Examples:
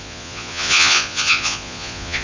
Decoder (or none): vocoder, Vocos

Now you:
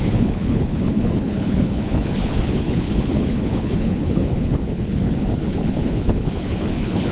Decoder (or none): codec, HILCodec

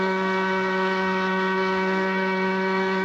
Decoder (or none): codec, SNAC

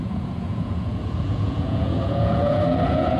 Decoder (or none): vocoder, Vocos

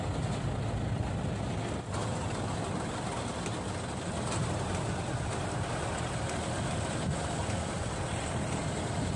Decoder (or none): none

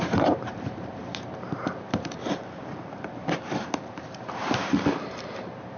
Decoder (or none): vocoder, BigVGAN v2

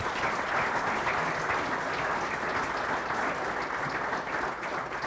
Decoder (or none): none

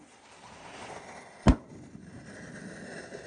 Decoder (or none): none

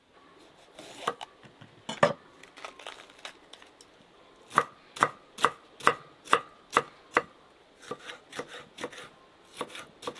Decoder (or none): none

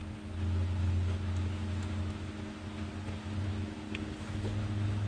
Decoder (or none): none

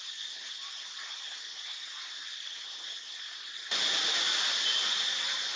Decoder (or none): none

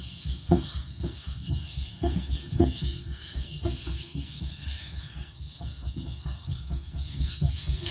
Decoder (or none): codec, SNAC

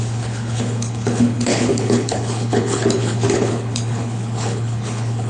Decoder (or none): codec, HILCodec